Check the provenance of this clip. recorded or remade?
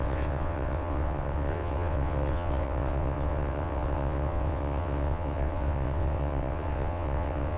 remade